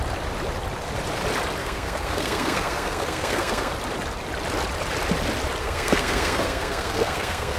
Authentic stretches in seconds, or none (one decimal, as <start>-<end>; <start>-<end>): 0.0-1.6; 3.7-5.6